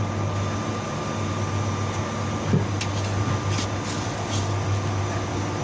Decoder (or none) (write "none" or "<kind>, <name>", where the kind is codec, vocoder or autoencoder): none